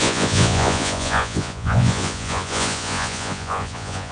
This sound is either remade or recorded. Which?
remade